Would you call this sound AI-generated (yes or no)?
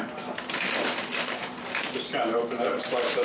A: no